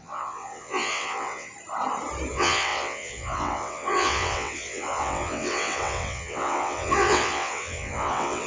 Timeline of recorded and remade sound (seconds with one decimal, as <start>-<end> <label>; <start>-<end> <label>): 0.0-1.5 remade; 1.5-2.3 recorded; 2.3-8.5 remade